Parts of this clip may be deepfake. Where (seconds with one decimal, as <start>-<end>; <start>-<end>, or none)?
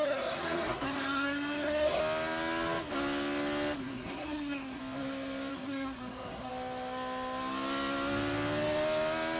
0.0-2.0; 3.8-4.8; 5.5-6.5